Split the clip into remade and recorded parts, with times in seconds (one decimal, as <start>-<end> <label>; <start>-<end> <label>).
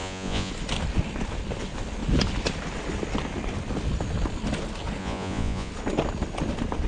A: 0.0-0.5 remade; 0.5-5.0 recorded; 5.0-5.7 remade; 5.7-6.9 recorded